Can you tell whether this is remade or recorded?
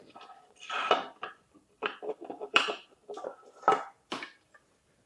remade